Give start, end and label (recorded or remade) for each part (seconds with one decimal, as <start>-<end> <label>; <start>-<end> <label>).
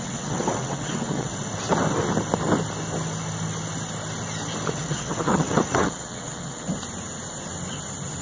0.0-1.3 remade; 1.3-4.7 recorded; 4.7-6.7 remade; 6.7-8.2 recorded